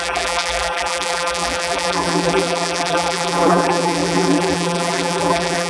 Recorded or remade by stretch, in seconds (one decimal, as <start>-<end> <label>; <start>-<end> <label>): 0.0-5.7 remade